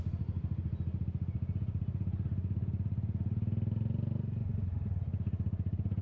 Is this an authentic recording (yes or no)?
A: yes